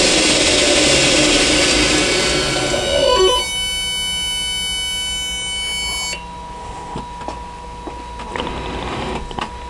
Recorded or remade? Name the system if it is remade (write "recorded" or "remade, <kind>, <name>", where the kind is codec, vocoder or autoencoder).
recorded